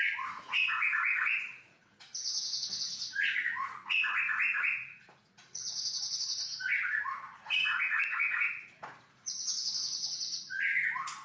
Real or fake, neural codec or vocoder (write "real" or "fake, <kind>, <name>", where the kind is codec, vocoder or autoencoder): fake, vocoder, Vocos